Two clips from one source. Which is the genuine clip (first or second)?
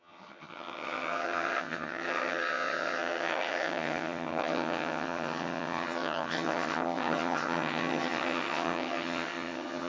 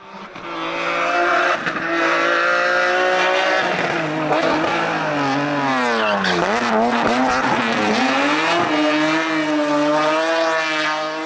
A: second